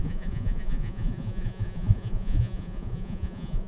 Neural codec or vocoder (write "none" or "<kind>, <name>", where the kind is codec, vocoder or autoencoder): vocoder, Vocos